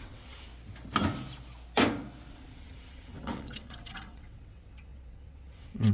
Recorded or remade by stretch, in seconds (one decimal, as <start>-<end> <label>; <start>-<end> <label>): 0.0-0.5 remade; 0.5-2.3 recorded; 2.3-5.9 remade

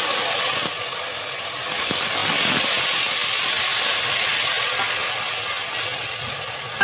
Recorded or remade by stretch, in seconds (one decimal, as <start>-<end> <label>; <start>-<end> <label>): 0.0-6.8 recorded

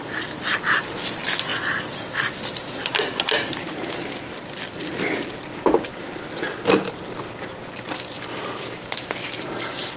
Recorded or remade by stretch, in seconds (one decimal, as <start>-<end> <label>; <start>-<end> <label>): 0.0-10.0 recorded